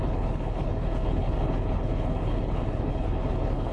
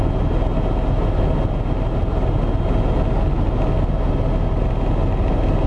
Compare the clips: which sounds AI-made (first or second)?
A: first